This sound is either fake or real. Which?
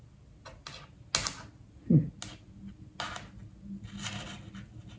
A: real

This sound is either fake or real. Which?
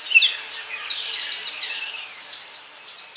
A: fake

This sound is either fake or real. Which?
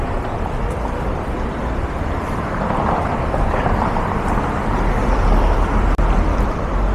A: fake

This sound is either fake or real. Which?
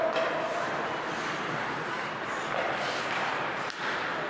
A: fake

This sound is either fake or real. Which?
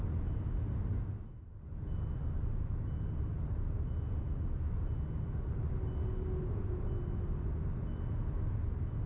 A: real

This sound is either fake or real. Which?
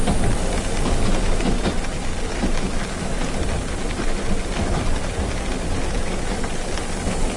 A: real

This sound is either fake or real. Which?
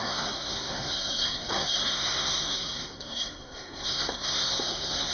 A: fake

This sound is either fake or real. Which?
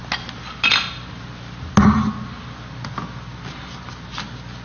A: real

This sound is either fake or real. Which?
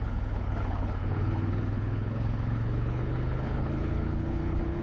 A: fake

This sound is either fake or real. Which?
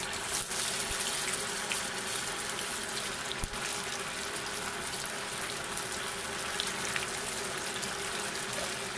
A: real